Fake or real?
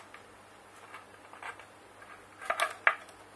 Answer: real